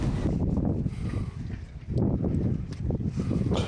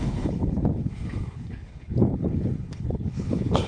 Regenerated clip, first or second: second